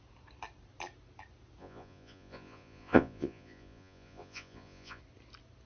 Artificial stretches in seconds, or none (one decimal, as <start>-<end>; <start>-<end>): 1.6-5.0